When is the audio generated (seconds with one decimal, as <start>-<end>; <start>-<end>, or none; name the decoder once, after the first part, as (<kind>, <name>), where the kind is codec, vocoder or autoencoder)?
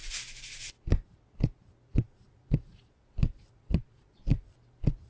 1.9-4.2 (vocoder, Vocos)